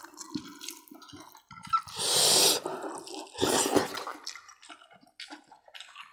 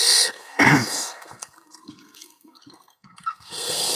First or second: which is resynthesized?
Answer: second